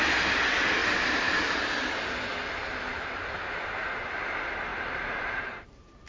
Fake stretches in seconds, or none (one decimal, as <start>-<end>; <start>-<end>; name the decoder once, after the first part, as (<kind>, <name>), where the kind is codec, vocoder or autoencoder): 0.8-1.6 (vocoder, BigVGAN v2); 2.9-3.6; 4.7-6.1